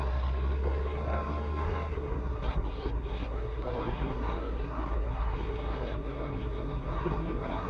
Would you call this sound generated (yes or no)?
yes